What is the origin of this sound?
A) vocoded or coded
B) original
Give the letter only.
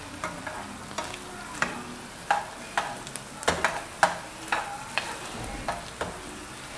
B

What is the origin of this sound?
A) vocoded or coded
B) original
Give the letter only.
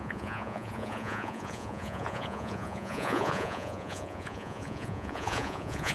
A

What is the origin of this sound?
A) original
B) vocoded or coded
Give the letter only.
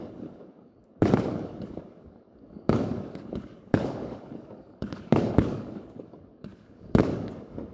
B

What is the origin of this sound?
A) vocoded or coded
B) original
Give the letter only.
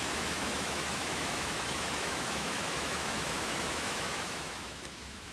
A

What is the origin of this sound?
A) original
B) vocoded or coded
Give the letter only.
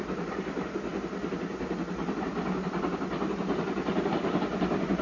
A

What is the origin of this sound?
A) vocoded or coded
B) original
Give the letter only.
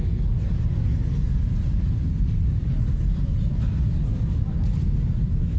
B